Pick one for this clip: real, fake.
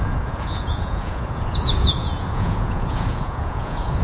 fake